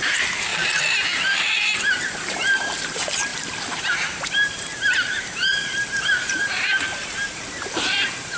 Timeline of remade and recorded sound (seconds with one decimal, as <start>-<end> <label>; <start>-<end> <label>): 0.0-0.5 remade; 0.5-1.5 recorded; 1.5-8.4 remade